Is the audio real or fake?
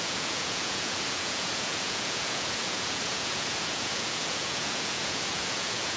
fake